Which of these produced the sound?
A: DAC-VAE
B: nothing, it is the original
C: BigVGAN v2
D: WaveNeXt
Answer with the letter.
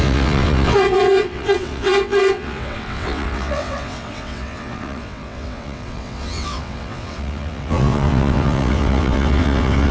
D